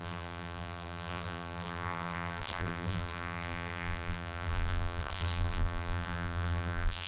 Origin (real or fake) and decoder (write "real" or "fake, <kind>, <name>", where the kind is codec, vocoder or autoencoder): fake, vocoder, BigVGAN v2